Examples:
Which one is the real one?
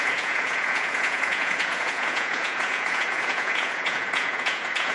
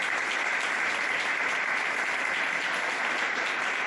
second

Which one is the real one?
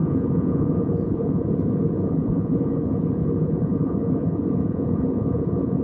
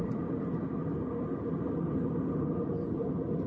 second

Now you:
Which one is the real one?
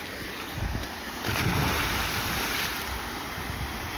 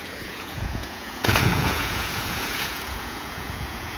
first